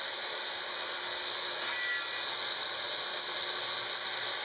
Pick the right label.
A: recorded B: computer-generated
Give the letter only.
A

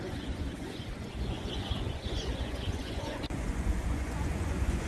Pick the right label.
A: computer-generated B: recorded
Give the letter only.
A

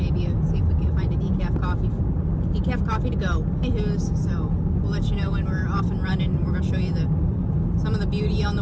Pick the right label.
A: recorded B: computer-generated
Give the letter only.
A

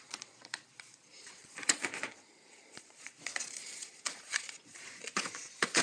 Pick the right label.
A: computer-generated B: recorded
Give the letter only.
A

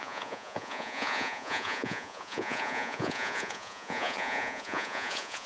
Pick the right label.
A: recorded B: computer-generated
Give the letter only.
B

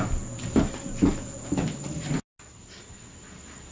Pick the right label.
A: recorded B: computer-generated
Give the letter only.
A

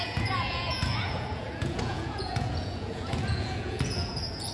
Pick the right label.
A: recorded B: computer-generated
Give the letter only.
B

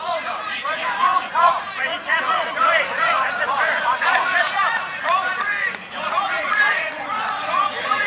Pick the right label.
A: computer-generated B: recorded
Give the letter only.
A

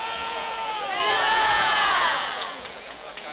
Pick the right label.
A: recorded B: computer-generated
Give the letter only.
B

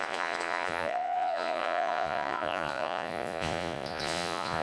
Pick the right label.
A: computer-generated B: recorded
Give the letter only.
A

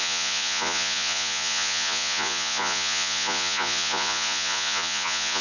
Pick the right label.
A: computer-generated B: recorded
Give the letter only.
A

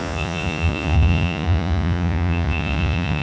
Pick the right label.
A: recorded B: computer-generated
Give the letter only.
B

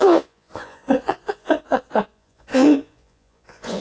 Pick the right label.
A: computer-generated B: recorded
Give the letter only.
A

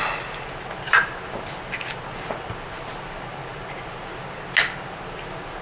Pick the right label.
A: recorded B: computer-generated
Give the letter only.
A